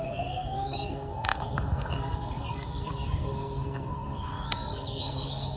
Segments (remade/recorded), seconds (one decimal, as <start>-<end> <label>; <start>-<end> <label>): 0.0-5.6 remade